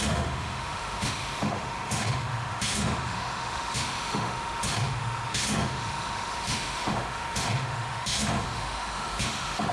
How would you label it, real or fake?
fake